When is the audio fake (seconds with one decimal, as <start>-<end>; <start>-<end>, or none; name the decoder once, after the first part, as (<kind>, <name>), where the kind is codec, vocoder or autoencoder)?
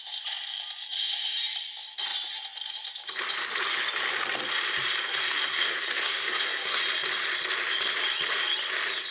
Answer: 5.1-6.8 (codec, SNAC)